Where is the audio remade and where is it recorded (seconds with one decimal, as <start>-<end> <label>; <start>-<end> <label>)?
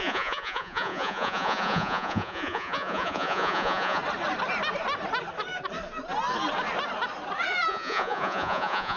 0.0-4.0 remade; 4.0-7.7 recorded; 7.7-9.0 remade